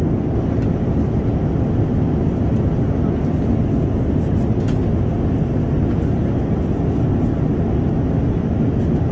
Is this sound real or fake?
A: real